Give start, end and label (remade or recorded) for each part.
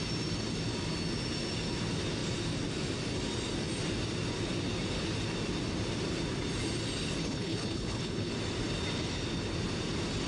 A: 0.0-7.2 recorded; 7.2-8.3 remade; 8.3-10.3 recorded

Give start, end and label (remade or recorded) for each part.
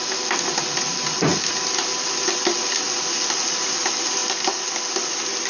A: 0.0-5.5 recorded